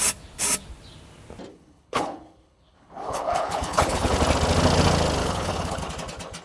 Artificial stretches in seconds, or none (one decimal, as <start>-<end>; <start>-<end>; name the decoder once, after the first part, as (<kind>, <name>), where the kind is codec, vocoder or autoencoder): 1.5-4.1 (codec, HILCodec); 5.2-5.8